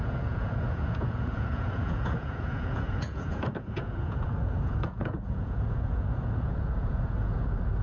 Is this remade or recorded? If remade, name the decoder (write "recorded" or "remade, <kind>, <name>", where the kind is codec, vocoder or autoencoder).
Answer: remade, vocoder, Vocos